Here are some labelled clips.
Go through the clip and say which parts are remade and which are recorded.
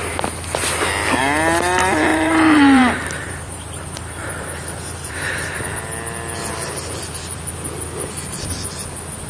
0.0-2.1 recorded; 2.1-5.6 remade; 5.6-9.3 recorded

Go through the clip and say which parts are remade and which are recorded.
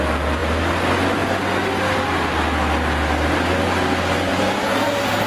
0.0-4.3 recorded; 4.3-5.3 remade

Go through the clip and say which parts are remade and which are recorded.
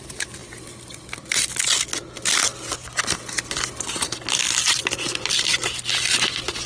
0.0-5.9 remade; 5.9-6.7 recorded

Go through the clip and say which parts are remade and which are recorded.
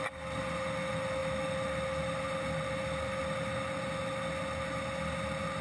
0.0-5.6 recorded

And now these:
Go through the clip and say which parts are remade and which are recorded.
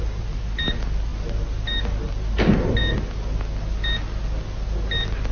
0.0-5.3 recorded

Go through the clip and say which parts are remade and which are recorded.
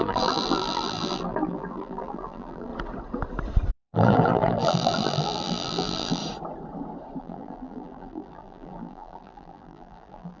0.0-2.7 remade; 2.7-3.7 recorded; 3.7-6.2 remade; 6.2-7.2 recorded; 7.2-10.4 remade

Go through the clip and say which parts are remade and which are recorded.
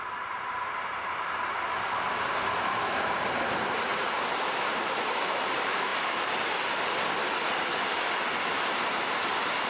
0.0-5.9 remade; 5.9-8.5 recorded; 8.5-9.7 remade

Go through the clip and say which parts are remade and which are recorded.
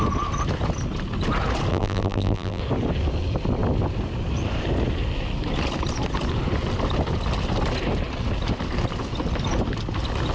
0.0-1.7 recorded; 1.7-2.6 remade; 2.6-10.3 recorded